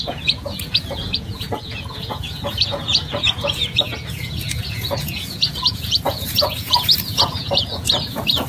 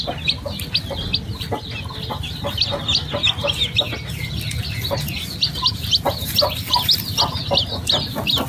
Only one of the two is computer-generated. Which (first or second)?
first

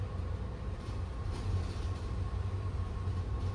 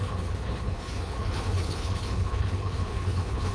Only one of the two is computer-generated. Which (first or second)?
second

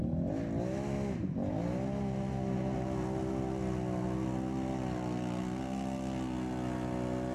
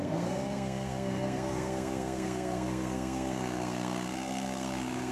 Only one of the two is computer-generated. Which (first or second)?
second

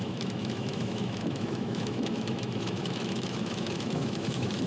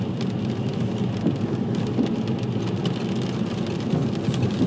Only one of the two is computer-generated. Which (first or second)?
first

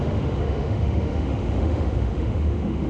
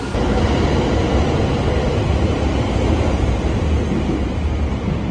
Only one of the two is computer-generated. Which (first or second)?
first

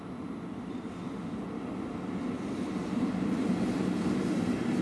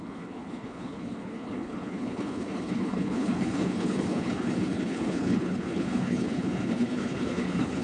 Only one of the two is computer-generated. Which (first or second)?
second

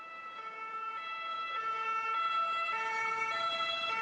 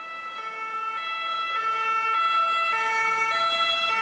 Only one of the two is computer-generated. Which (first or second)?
first